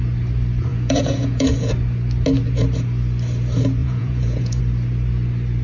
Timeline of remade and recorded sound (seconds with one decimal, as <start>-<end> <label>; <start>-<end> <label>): 0.0-0.7 recorded; 0.7-1.7 remade; 1.7-3.8 recorded; 3.8-4.6 remade; 4.6-5.6 recorded